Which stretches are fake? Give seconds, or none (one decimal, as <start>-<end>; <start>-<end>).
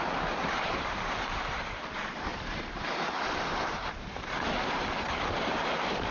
0.0-6.1